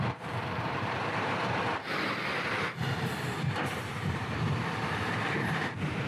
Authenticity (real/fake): fake